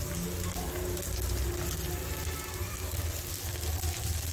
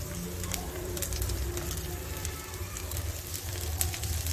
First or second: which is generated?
second